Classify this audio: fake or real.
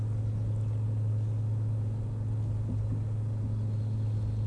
real